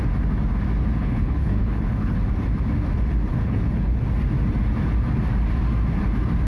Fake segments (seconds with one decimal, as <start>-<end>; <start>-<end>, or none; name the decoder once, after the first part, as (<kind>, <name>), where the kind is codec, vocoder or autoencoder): 1.0-2.3 (codec, HILCodec); 3.3-4.0